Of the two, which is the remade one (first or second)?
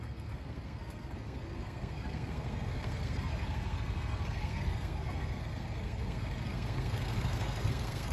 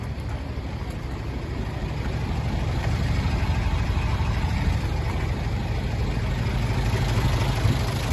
first